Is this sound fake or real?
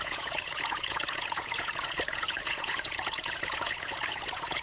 fake